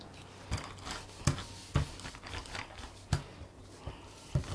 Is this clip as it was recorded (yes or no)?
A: yes